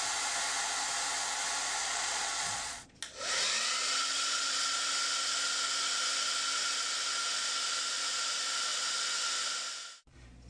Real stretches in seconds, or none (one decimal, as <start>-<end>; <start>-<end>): 0.0-1.8; 3.0-4.1; 4.8-10.5